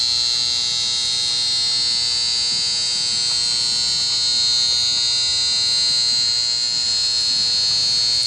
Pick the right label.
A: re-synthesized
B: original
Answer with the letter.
B